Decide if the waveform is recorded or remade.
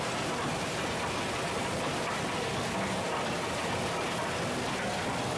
recorded